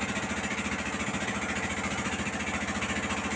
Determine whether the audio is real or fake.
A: real